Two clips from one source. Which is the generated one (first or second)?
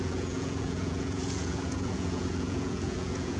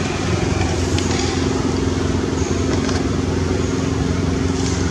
first